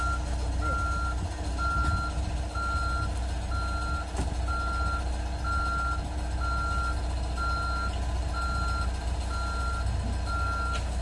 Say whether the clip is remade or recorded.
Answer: recorded